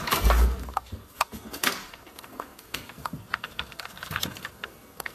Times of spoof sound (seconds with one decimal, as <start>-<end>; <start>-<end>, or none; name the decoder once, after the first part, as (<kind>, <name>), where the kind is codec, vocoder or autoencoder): 0.0-5.1 (codec, SNAC)